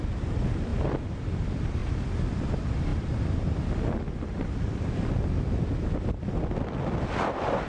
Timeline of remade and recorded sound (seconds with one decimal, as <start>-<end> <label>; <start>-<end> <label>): 0.0-1.8 remade; 1.8-2.4 recorded; 2.4-7.7 remade